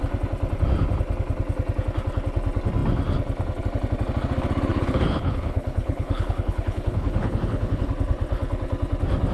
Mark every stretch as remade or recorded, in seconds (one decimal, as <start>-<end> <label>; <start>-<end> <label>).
0.0-4.7 recorded; 4.7-7.9 remade; 7.9-9.3 recorded